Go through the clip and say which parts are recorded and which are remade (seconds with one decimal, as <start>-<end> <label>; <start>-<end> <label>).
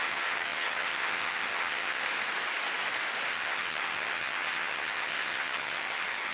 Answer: 0.0-2.0 remade; 2.0-3.3 recorded; 3.3-6.3 remade